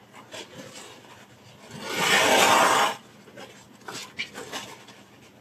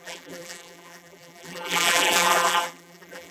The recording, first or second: first